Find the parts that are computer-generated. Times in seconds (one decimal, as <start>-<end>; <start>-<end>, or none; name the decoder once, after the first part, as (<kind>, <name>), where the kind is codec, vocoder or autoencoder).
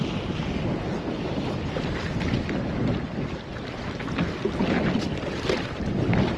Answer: none